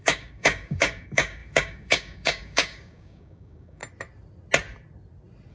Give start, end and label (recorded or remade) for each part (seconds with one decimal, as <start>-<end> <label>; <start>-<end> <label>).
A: 0.0-3.8 remade; 3.8-5.5 recorded